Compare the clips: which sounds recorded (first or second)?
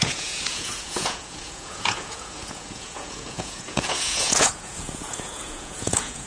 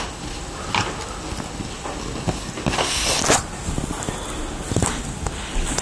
second